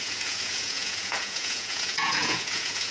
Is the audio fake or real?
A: fake